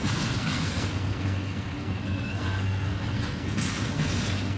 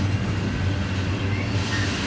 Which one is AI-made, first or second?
first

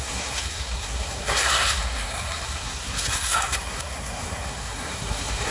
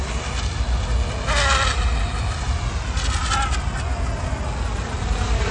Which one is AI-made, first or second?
first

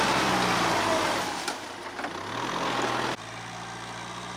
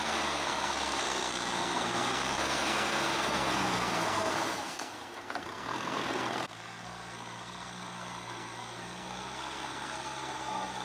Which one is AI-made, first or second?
second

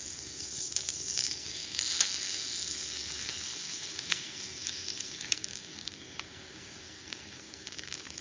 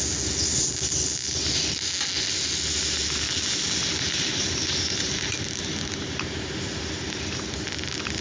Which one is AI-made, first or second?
first